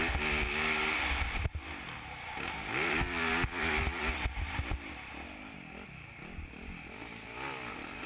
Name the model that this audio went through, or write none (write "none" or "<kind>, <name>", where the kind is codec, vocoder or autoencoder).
none